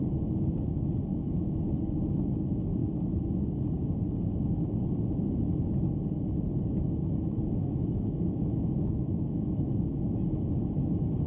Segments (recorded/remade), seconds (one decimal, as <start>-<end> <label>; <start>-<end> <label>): 0.0-1.1 recorded; 1.1-1.6 remade; 1.6-7.6 recorded; 7.6-9.7 remade; 9.7-11.3 recorded